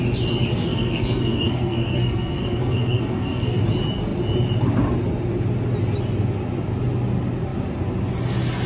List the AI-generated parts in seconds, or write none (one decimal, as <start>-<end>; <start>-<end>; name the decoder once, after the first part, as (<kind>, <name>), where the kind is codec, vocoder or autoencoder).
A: 0.5-3.6 (codec, SNAC)